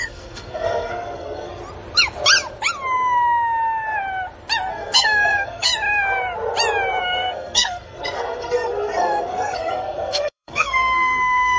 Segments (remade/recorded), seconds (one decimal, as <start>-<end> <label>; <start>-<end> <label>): 0.0-1.6 remade; 1.6-4.7 recorded; 4.7-5.7 remade; 5.7-7.0 recorded; 7.0-11.6 remade